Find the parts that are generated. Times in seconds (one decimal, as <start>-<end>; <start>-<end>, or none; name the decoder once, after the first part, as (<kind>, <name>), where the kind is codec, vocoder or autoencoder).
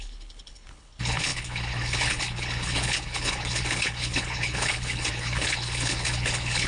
0.0-6.7 (codec, HILCodec)